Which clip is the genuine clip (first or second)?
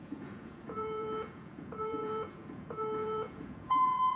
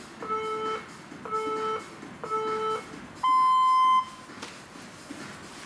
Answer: second